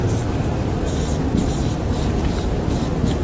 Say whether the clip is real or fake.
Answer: real